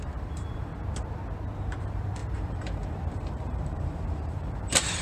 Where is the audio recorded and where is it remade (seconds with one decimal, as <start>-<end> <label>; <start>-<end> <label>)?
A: 0.0-0.7 remade; 0.7-1.8 recorded; 1.8-5.0 remade